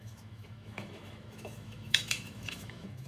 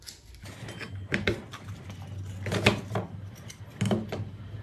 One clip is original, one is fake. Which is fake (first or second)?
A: first